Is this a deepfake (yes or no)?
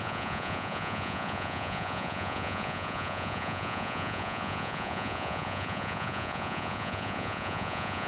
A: yes